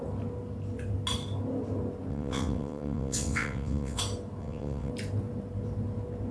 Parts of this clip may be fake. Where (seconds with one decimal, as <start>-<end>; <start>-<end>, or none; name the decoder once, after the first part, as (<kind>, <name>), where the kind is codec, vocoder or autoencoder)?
2.1-4.0 (vocoder, WaveNeXt); 4.4-4.9